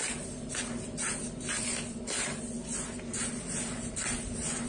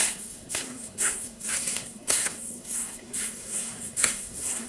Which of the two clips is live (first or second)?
first